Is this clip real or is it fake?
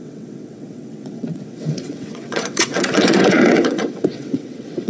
fake